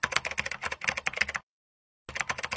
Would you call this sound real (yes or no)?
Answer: yes